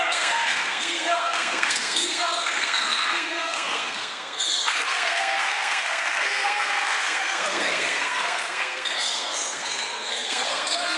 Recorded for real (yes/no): no